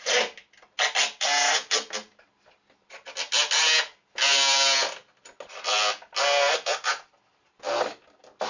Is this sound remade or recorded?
recorded